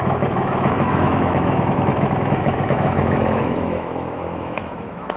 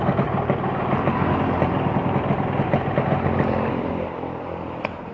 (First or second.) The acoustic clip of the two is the second